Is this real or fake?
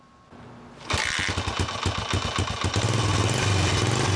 real